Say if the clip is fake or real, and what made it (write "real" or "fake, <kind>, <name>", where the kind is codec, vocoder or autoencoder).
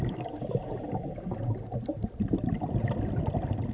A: real